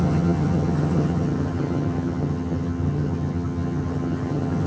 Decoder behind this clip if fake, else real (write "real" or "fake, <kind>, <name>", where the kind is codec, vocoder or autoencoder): fake, vocoder, HiFi-GAN